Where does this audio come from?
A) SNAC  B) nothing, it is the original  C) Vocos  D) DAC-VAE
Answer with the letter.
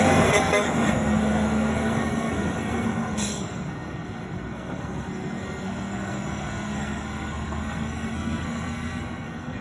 A